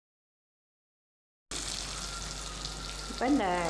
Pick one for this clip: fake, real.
real